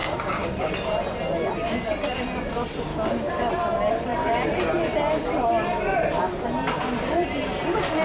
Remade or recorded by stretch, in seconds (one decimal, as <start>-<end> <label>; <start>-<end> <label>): 0.0-0.7 remade; 0.7-2.9 recorded; 2.9-3.5 remade; 3.5-8.0 recorded